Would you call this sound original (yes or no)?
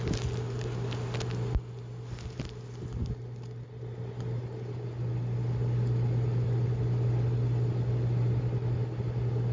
yes